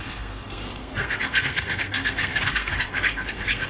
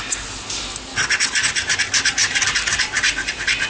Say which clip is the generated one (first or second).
first